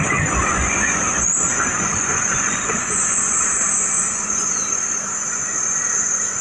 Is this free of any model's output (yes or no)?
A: no